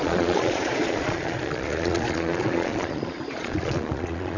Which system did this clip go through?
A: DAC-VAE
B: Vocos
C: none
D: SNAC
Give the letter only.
B